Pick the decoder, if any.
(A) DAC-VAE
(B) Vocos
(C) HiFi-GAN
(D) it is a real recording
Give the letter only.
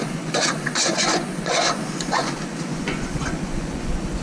B